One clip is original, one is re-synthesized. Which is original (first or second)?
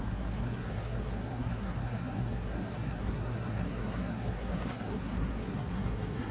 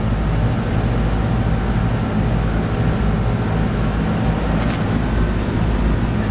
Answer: second